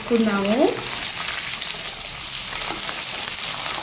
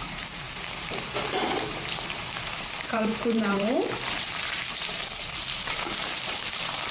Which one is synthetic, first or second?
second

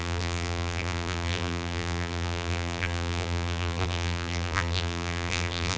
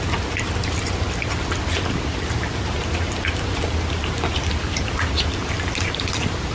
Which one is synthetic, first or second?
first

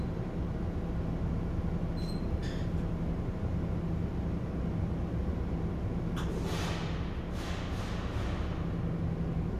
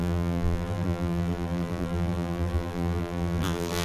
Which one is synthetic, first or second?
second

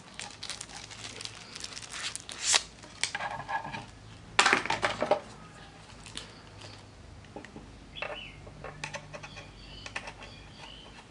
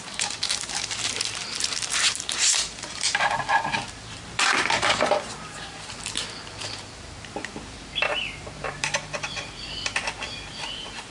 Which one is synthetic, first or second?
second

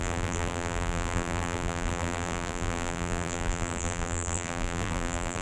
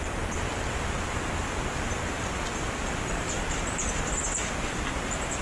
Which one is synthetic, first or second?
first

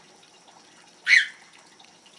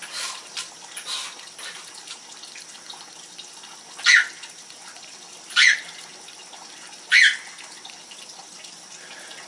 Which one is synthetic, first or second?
first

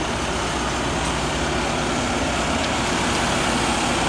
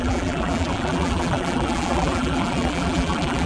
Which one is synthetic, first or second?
second